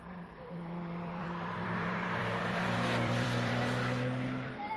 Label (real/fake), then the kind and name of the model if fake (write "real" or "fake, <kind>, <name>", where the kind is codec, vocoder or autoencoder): fake, vocoder, BigVGAN v2